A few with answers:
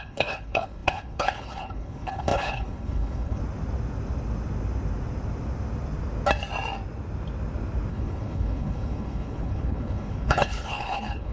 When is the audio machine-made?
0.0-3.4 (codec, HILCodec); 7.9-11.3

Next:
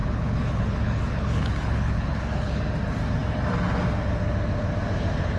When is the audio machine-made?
0.0-2.6 (codec, HILCodec)

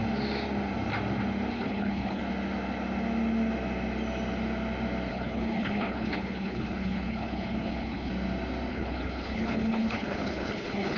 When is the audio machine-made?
1.5-2.2 (codec, HILCodec); 5.1-8.1; 8.7-11.0